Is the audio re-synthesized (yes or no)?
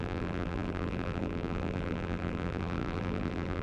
yes